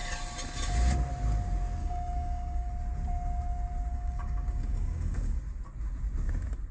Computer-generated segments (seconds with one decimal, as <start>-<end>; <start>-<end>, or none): 1.8-2.7; 3.9-5.4